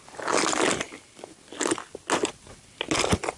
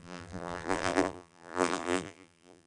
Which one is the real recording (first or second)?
first